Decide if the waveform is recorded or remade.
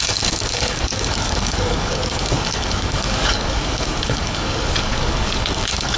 remade